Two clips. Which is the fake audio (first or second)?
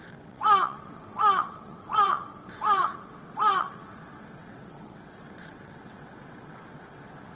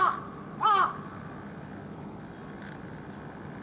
first